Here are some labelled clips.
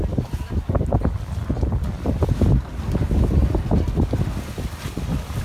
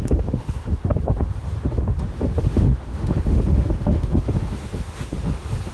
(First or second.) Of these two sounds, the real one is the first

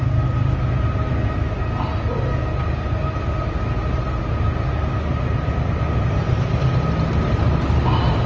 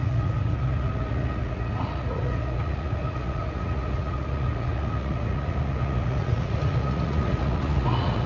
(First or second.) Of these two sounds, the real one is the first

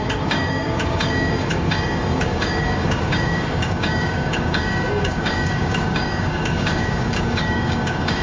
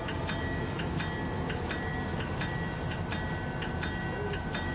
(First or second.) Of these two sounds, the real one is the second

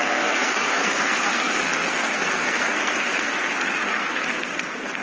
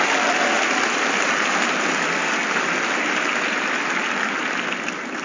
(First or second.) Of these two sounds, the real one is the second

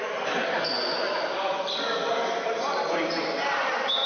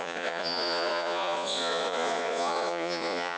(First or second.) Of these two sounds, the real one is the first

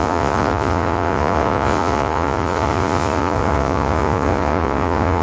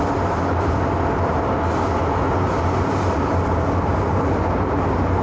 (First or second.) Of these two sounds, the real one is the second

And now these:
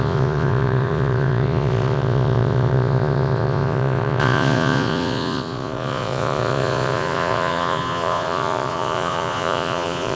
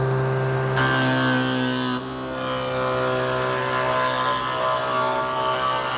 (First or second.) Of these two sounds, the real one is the second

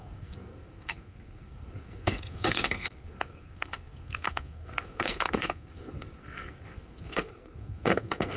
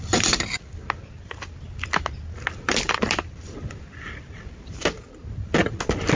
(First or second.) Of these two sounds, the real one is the second